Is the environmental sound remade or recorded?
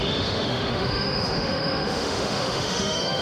remade